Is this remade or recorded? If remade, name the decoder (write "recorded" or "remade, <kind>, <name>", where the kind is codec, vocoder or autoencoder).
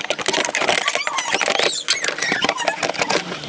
recorded